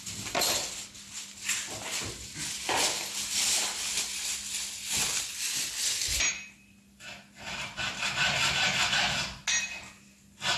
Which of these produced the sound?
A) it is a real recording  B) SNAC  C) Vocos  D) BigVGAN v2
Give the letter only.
A